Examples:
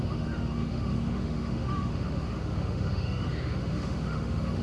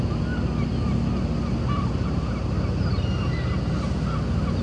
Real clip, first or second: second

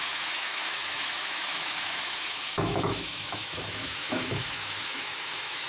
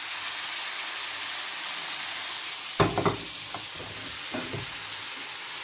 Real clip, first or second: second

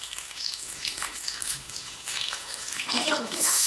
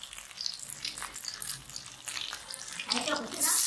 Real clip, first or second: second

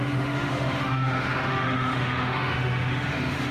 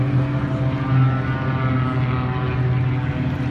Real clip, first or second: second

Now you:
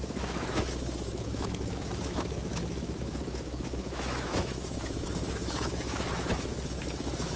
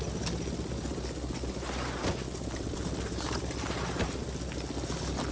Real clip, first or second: second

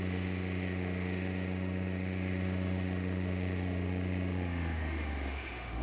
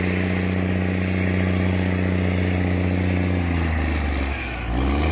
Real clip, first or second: second